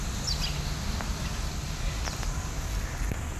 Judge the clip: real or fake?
real